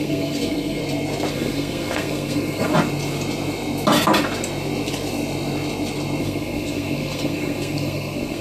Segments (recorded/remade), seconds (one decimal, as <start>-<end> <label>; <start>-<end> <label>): 0.0-0.8 remade; 0.8-1.3 recorded; 1.3-2.7 remade; 2.7-6.2 recorded; 6.2-8.4 remade